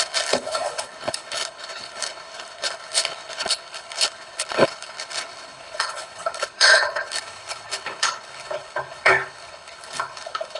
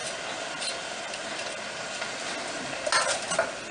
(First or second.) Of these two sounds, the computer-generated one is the first